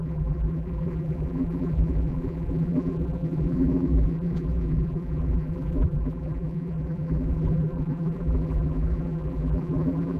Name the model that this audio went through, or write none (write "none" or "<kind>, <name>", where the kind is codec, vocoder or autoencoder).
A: vocoder, BigVGAN v2